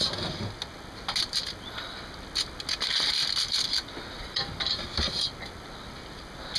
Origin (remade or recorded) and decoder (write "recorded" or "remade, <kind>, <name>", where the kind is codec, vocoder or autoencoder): recorded